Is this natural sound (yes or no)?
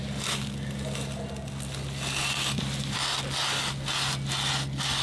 yes